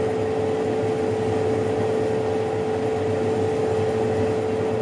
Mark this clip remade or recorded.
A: recorded